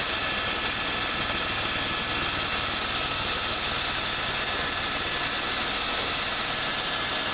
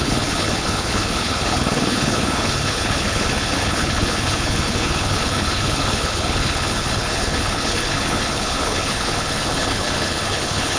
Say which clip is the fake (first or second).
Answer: second